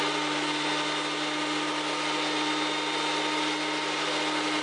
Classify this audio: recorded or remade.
recorded